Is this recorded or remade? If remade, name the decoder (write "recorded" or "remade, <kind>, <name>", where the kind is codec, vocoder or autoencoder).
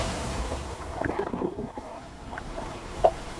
remade, codec, SNAC